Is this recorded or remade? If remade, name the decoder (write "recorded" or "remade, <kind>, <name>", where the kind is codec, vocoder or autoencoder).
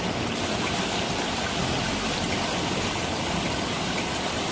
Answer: recorded